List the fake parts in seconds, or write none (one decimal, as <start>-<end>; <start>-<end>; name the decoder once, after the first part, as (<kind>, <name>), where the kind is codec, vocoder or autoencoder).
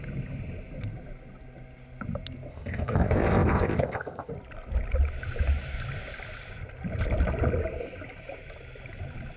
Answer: 2.5-4.3 (codec, ZipCodec)